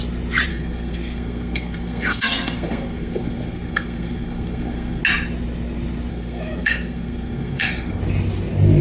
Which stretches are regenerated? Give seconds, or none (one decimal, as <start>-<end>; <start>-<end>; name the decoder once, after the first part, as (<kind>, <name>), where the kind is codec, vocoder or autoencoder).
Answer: 0.5-5.0 (codec, SNAC); 6.1-8.0